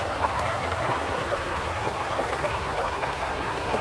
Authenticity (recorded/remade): remade